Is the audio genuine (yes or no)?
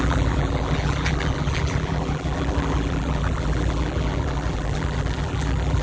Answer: no